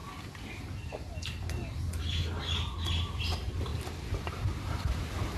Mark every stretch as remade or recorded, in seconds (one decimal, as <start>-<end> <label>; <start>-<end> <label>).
0.0-3.2 recorded; 3.2-5.4 remade